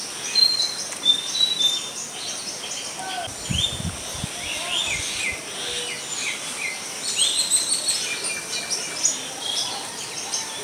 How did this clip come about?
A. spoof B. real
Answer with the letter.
B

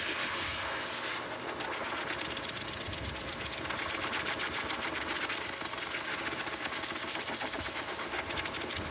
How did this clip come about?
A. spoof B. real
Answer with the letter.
B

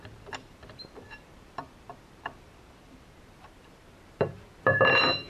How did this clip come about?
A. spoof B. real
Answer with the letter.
A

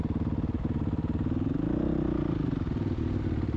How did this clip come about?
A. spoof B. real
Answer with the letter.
B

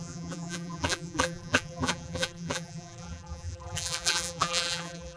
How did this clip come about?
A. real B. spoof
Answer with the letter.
B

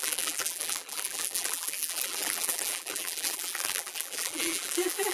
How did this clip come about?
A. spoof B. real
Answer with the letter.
A